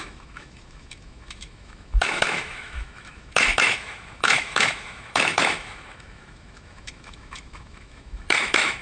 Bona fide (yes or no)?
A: no